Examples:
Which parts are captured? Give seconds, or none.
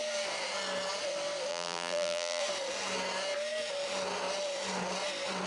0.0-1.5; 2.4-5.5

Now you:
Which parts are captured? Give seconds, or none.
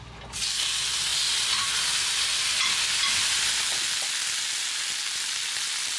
0.0-6.0